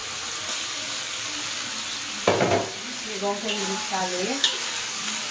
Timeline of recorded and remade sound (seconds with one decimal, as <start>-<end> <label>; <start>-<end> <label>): 0.0-0.6 recorded; 0.6-1.7 remade; 1.7-4.0 recorded; 4.0-5.3 remade

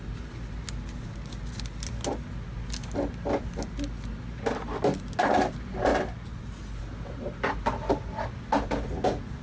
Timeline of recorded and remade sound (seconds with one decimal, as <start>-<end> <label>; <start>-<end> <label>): 0.0-9.4 recorded

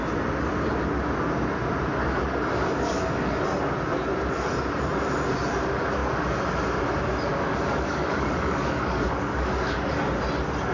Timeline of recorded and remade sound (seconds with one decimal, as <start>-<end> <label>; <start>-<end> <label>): 0.0-2.0 recorded; 2.0-3.4 remade; 3.4-7.3 recorded; 7.3-9.9 remade; 9.9-10.7 recorded

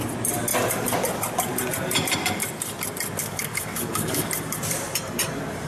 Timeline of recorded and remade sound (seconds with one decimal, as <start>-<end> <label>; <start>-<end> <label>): 0.0-3.2 recorded; 3.2-4.3 remade; 4.3-5.7 recorded

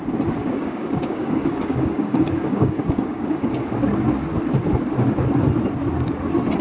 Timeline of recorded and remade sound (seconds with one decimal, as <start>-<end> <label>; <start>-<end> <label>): 0.0-0.4 recorded; 0.4-3.7 remade; 3.7-6.6 recorded

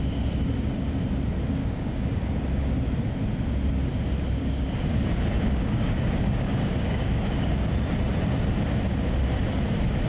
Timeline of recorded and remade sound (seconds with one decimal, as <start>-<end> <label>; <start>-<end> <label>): 0.0-1.6 recorded; 1.6-2.2 remade; 2.2-4.4 recorded; 4.4-7.5 remade; 7.5-10.1 recorded